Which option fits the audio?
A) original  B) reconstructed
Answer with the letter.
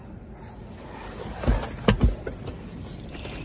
A